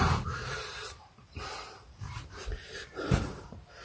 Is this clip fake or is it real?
fake